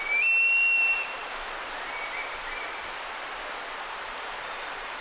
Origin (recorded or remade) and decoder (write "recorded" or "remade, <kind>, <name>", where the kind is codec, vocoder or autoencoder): recorded